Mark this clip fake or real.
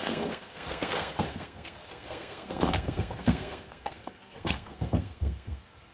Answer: fake